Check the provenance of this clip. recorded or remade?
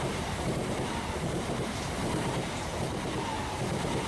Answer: remade